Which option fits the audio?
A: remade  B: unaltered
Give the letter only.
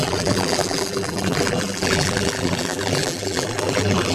A